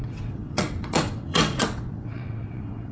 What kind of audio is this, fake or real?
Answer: fake